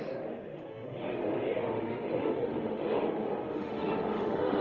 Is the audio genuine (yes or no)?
no